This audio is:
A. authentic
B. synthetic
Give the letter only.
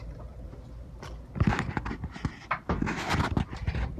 A